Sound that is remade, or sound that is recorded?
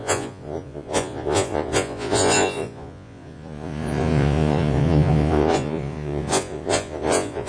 remade